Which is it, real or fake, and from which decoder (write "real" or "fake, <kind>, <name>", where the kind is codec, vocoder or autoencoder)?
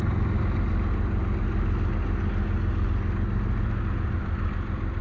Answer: real